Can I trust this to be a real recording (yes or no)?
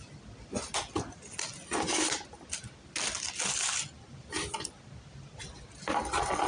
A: yes